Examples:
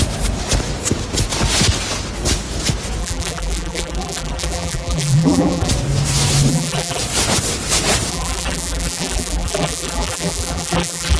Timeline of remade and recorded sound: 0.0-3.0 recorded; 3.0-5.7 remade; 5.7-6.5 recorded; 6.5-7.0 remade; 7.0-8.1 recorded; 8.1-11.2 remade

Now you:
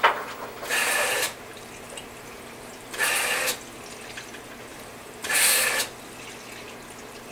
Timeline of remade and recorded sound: 0.0-0.7 recorded; 0.7-3.1 remade; 3.1-4.7 recorded; 4.7-5.8 remade; 5.8-7.3 recorded

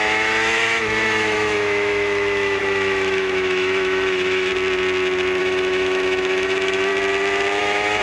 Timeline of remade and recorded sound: 0.0-4.5 remade; 4.5-5.4 recorded; 5.4-6.9 remade; 6.9-7.6 recorded; 7.6-8.0 remade

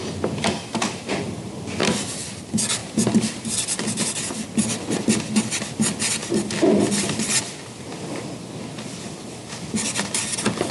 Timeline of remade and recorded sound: 0.0-1.8 recorded; 1.8-2.4 remade; 2.4-2.8 recorded; 2.8-3.5 remade; 3.5-6.2 recorded; 6.2-7.6 remade; 7.6-10.7 recorded

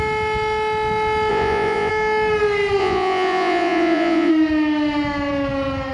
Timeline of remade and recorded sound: 0.0-1.3 recorded; 1.3-1.9 remade; 1.9-2.8 recorded; 2.8-4.3 remade; 4.3-5.9 recorded

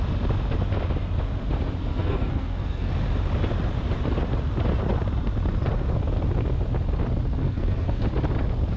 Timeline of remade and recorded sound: 0.0-1.9 recorded; 1.9-2.9 remade; 2.9-7.4 recorded; 7.4-8.0 remade; 8.0-8.8 recorded

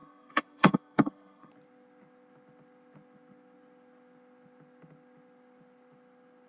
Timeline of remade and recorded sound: 0.0-1.5 remade; 1.5-6.5 recorded